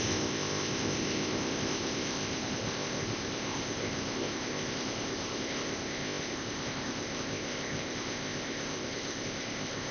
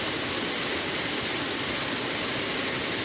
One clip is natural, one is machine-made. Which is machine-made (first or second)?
first